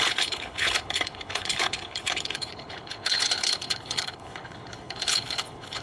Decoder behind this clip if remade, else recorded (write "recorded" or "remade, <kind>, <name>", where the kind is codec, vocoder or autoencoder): remade, codec, HILCodec